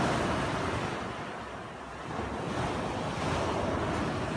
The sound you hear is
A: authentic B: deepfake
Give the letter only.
A